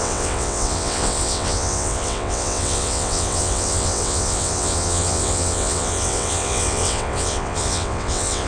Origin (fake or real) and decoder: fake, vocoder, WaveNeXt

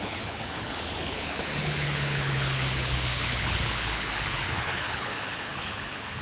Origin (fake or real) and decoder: fake, codec, HILCodec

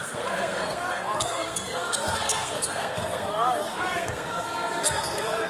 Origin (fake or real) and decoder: fake, codec, SNAC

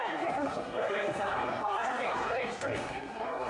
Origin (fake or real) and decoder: fake, codec, SNAC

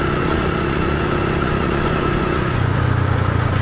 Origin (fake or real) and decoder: fake, vocoder, Vocos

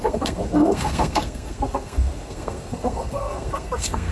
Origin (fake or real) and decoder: fake, codec, SNAC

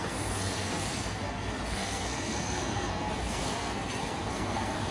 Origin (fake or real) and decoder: fake, codec, SNAC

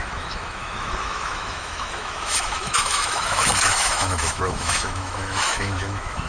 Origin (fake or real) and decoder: fake, autoencoder, DAC-VAE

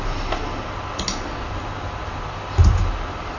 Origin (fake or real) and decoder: real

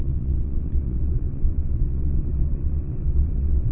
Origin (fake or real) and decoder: fake, vocoder, WaveNeXt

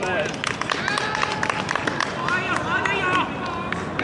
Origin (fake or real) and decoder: real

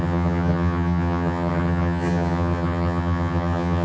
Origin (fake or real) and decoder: fake, vocoder, HiFi-GAN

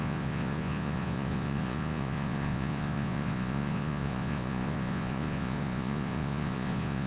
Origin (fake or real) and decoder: fake, vocoder, Vocos